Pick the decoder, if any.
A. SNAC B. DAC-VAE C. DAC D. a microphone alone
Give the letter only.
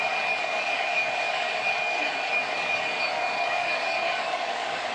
C